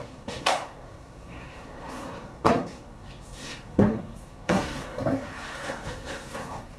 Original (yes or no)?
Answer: no